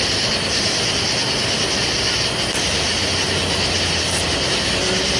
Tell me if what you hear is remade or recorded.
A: recorded